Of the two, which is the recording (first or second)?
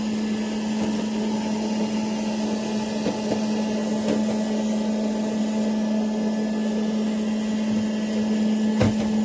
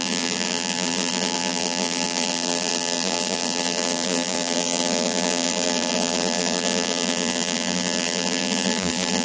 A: first